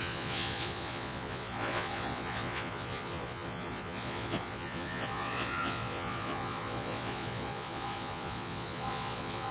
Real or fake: fake